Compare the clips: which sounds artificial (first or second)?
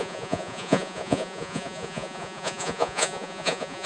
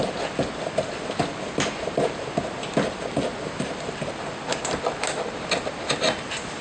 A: first